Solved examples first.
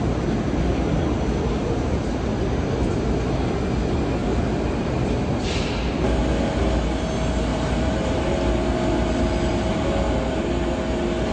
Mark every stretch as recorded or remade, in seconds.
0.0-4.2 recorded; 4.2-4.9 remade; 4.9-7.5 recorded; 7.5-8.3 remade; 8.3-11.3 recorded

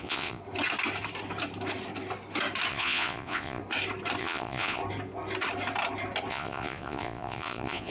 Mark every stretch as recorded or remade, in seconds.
0.0-0.4 remade; 0.4-2.7 recorded; 2.7-3.6 remade; 3.6-4.2 recorded; 4.2-4.8 remade; 4.8-6.3 recorded; 6.3-7.9 remade

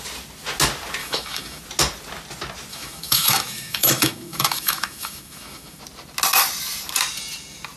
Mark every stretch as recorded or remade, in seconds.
0.0-1.0 recorded; 1.0-1.6 remade; 1.6-2.7 recorded; 2.7-5.8 remade; 5.8-7.8 recorded

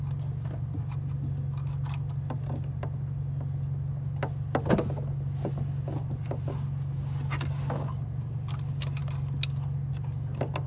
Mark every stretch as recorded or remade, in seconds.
0.0-10.7 recorded

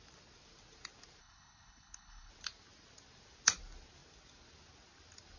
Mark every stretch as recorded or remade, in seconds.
0.0-1.2 recorded; 1.2-2.3 remade; 2.3-5.4 recorded

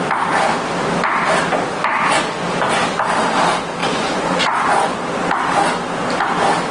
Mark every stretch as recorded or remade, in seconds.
0.0-3.8 recorded; 3.8-5.0 remade; 5.0-6.7 recorded

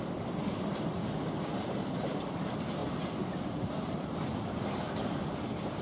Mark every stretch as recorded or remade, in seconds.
0.0-2.8 recorded; 2.8-4.1 remade; 4.1-5.8 recorded